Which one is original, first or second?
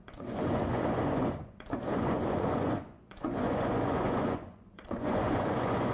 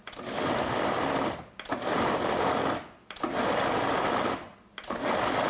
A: second